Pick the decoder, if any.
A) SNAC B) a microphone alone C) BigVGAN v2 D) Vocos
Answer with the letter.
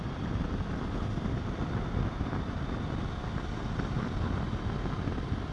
B